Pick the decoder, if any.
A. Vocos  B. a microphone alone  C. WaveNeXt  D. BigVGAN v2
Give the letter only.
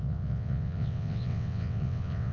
C